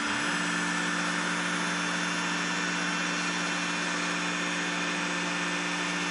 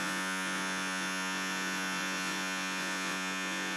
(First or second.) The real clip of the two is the first